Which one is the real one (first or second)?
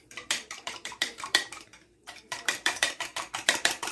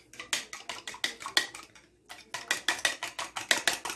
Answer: second